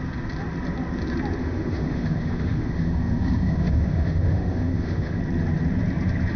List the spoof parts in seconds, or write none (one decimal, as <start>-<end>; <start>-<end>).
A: 1.4-5.2